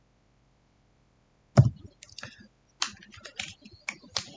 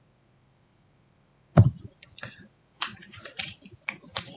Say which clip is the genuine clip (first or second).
first